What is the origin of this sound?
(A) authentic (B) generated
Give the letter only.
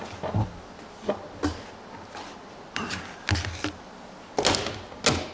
A